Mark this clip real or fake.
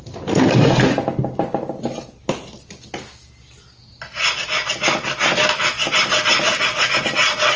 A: real